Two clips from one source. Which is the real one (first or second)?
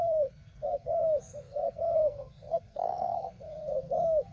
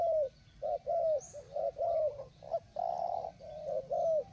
second